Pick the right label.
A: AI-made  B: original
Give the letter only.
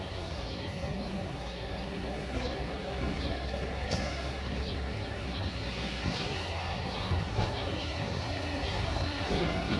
A